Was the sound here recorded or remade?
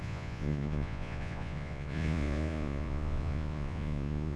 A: remade